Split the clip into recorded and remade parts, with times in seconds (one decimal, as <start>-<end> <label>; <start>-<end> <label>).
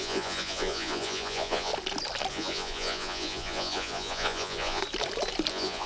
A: 0.0-1.7 remade; 1.7-2.3 recorded; 2.3-4.8 remade; 4.8-5.5 recorded; 5.5-5.9 remade